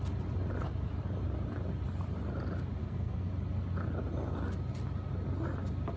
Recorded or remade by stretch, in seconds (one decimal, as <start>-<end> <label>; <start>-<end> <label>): 0.0-2.8 recorded; 2.8-3.3 remade; 3.3-6.0 recorded